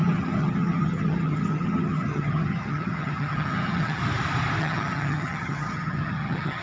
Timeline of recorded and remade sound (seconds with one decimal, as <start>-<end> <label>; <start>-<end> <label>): 0.0-4.0 remade; 4.0-4.6 recorded; 4.6-6.6 remade